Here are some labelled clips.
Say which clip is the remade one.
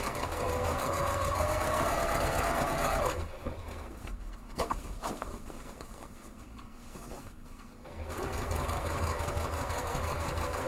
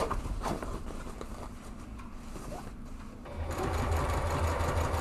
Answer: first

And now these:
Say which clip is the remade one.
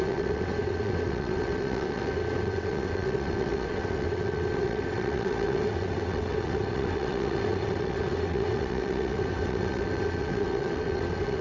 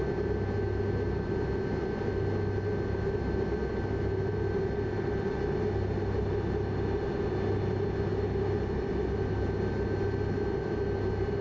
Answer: first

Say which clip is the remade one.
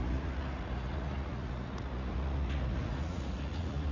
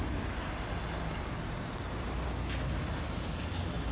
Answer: first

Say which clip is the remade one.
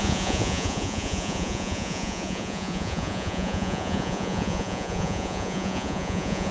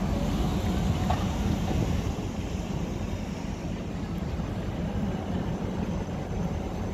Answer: first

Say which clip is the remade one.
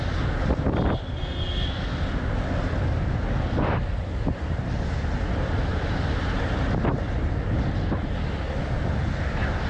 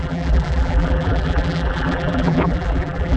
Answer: second